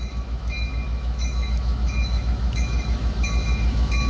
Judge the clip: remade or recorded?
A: remade